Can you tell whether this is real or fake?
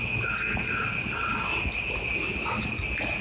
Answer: real